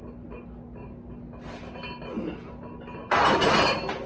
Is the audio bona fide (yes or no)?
yes